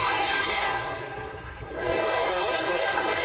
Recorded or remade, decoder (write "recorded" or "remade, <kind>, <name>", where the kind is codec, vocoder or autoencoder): remade, codec, SNAC